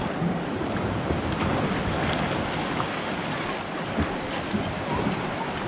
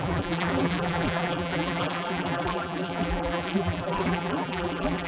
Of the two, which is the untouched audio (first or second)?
first